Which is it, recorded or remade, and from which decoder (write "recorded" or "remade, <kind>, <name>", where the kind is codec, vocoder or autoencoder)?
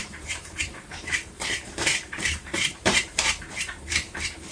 remade, vocoder, BigVGAN v2